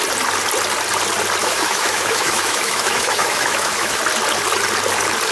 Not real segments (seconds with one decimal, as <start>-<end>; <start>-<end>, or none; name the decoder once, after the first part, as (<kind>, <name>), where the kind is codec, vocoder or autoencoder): 1.4-4.0 (autoencoder, DAC-VAE)